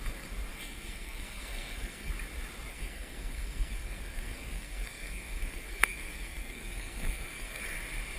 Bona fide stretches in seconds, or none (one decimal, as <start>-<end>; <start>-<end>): 0.0-0.5; 2.1-2.7; 7.6-8.2